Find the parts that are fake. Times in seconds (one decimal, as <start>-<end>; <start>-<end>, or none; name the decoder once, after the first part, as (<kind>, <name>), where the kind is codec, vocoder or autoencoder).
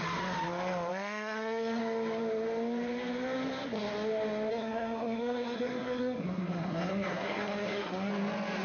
0.9-1.8 (codec, SNAC); 4.5-8.1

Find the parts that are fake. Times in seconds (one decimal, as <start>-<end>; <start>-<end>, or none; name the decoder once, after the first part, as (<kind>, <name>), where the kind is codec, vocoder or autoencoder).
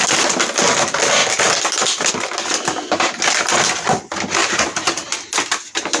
4.4-5.0 (vocoder, BigVGAN v2)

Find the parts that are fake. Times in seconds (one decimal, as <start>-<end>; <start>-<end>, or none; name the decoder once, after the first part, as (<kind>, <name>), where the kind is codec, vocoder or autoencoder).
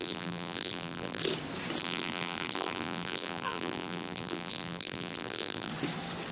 0.0-1.2 (vocoder, BigVGAN v2); 1.8-5.7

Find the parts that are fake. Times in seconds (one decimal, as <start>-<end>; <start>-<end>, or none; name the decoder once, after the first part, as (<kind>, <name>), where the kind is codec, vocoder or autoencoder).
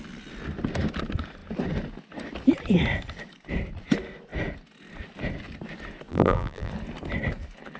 6.1-6.7 (vocoder, BigVGAN v2)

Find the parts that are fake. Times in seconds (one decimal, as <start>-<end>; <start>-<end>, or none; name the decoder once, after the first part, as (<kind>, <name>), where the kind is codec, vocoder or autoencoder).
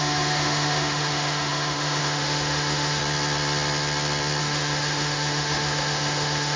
0.0-3.0 (autoencoder, DAC-VAE); 4.4-6.6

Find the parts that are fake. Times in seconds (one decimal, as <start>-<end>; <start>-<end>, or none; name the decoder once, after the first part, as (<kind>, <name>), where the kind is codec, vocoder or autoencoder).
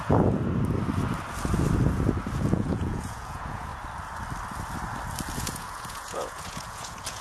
0.0-0.4 (vocoder, Vocos); 2.4-3.7; 5.4-7.2